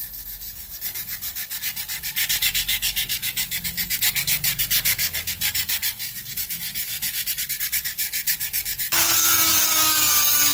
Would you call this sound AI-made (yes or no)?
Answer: yes